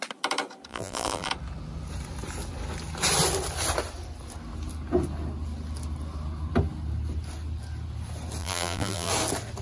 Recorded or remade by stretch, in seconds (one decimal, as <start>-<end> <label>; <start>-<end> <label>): 0.0-0.7 recorded; 0.7-1.3 remade; 1.3-8.4 recorded; 8.4-9.1 remade; 9.1-9.6 recorded